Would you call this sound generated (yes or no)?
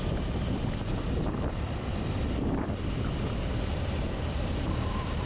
yes